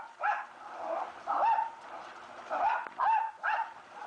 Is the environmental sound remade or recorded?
recorded